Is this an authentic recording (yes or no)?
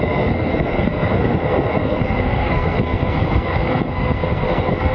no